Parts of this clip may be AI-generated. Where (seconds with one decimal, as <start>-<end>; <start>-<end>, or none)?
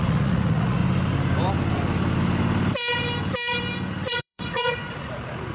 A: 0.0-0.8; 4.1-5.5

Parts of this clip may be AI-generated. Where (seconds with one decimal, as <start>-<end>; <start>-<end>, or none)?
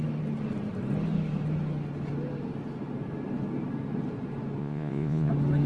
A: 4.6-5.3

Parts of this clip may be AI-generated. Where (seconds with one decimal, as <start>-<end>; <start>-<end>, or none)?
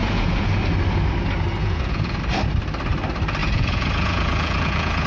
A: 0.0-0.5; 1.6-2.2; 3.4-5.1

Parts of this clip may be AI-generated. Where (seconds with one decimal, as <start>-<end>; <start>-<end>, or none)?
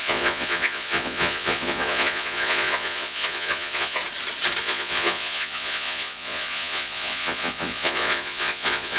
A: 0.0-4.0; 4.6-9.0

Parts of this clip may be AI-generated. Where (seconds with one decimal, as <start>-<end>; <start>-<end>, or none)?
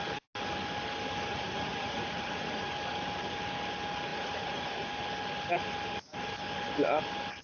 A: 1.3-2.7; 4.1-4.9